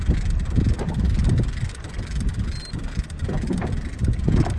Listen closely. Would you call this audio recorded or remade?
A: recorded